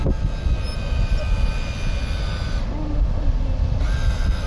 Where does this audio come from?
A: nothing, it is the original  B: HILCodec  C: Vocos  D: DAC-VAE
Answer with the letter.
A